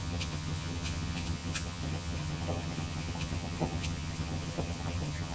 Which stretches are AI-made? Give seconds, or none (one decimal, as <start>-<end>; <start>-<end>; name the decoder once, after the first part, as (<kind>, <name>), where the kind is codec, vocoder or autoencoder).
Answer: 0.0-5.3 (vocoder, HiFi-GAN)